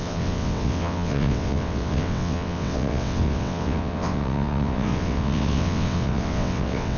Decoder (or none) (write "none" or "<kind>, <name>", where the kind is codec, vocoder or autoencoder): vocoder, WaveNeXt